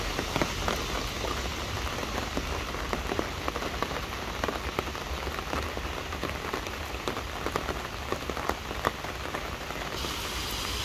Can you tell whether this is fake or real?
real